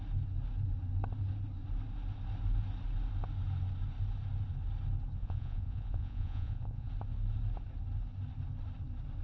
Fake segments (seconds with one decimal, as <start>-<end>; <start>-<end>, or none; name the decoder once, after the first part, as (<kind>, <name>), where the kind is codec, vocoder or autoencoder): 5.2-6.9 (vocoder, Vocos)